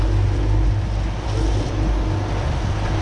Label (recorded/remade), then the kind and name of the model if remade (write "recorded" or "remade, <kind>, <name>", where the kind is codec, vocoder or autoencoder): recorded